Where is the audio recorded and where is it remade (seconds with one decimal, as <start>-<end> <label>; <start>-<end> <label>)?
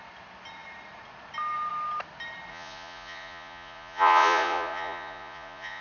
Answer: 0.0-2.5 recorded; 2.5-5.8 remade